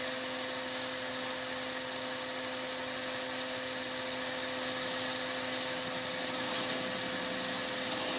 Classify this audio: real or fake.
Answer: real